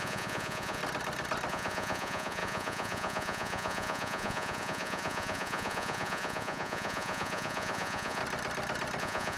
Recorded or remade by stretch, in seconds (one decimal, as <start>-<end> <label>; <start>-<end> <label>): 0.0-0.8 remade; 0.8-1.5 recorded; 1.5-8.2 remade; 8.2-9.0 recorded; 9.0-9.4 remade